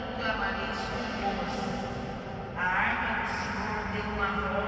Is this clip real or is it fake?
real